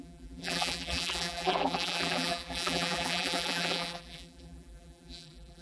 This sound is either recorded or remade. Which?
remade